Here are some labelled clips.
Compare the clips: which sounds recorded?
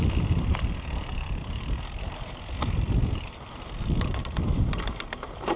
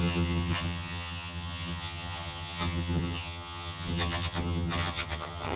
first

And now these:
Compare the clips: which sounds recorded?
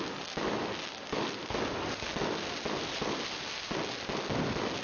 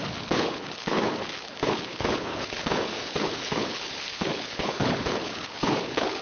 first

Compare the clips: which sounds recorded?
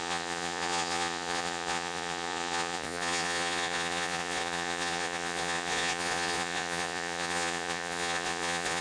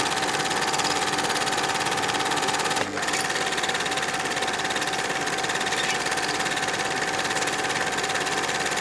second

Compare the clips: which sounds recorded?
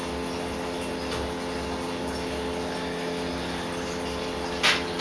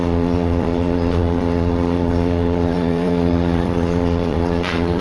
first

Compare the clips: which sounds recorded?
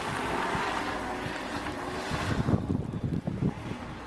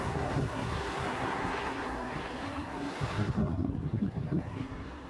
first